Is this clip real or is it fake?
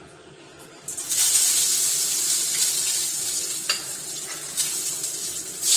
real